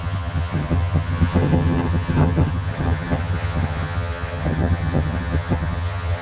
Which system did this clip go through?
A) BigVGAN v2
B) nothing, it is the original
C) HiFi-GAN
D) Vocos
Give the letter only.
C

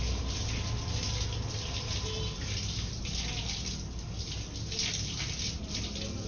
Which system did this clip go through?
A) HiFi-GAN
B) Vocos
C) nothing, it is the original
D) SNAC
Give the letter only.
C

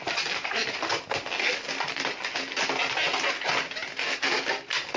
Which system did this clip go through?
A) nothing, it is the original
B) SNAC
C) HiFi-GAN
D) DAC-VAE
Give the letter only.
A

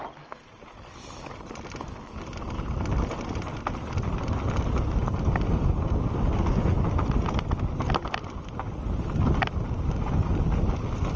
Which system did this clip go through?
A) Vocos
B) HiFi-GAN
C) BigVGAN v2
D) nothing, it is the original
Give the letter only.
D